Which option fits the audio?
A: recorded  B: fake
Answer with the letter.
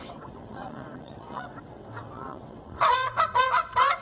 B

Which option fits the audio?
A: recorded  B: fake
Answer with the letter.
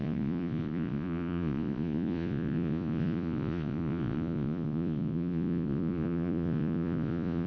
B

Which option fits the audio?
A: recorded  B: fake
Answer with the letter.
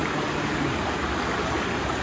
A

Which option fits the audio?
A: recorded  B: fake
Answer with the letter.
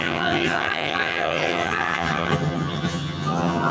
B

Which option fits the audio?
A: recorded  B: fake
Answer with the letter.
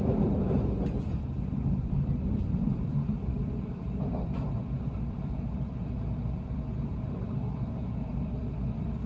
B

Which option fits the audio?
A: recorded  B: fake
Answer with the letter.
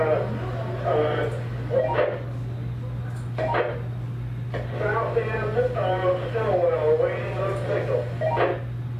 A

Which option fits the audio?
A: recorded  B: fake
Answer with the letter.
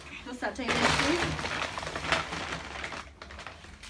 A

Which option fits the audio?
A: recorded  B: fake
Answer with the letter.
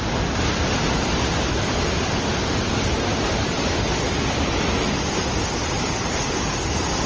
A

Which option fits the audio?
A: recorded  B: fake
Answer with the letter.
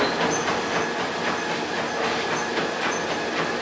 A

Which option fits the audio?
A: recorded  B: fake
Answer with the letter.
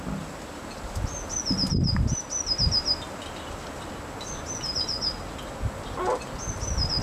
A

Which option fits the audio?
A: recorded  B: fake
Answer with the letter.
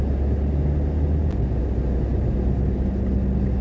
A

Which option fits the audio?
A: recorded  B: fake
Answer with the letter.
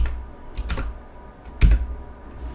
A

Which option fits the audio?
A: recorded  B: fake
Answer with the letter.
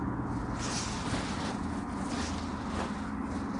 A